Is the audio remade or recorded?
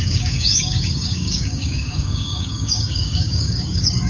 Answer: remade